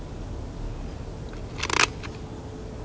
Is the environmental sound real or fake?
real